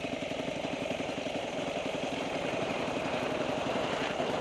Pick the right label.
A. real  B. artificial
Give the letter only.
B